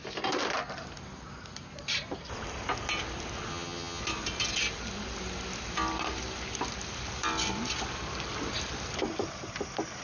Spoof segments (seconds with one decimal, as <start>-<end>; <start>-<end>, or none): 3.5-4.0